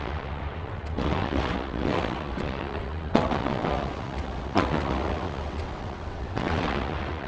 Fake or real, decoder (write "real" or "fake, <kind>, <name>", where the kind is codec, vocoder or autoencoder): fake, vocoder, WaveNeXt